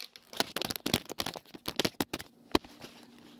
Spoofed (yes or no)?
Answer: no